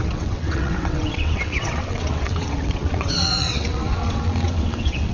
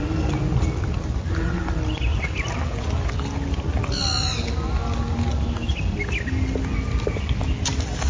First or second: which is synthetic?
first